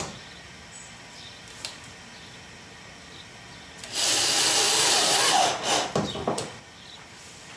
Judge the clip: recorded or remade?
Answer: recorded